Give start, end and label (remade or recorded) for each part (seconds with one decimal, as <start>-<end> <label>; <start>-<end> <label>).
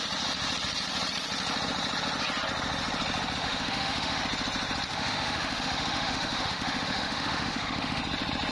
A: 0.0-3.4 recorded; 3.4-4.2 remade; 4.2-4.9 recorded; 4.9-8.0 remade; 8.0-8.5 recorded